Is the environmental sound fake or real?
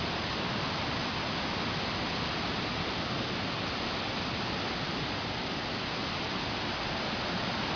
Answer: real